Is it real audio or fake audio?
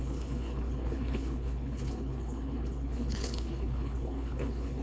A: fake